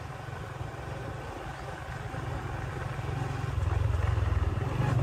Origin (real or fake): real